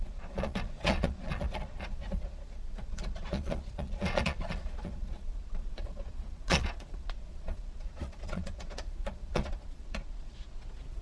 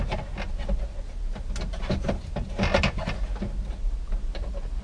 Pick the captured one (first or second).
second